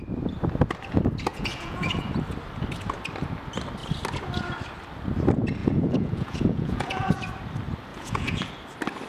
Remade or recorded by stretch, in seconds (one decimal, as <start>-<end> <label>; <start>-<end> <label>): 0.0-1.3 recorded; 1.3-2.1 remade; 2.1-5.6 recorded; 5.6-7.1 remade; 7.1-7.9 recorded; 7.9-8.5 remade; 8.5-9.1 recorded